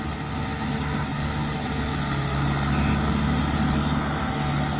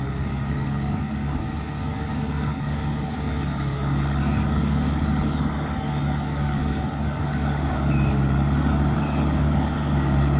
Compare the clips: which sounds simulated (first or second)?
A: second